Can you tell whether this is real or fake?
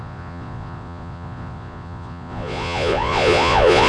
fake